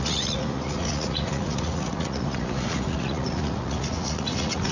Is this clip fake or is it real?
fake